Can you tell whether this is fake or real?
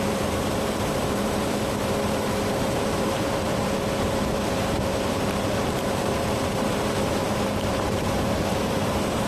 fake